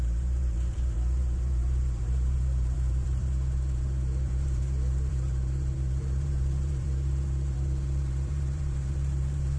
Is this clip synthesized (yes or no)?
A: yes